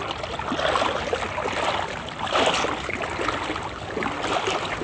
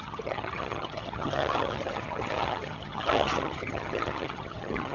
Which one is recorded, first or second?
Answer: first